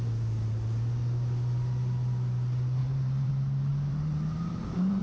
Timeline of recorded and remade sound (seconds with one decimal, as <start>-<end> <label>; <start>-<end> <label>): 0.0-2.8 recorded; 2.8-3.3 remade; 3.3-3.7 recorded; 3.7-5.0 remade